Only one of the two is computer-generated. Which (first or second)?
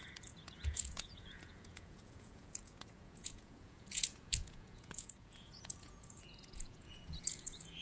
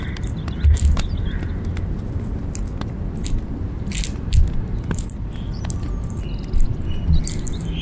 first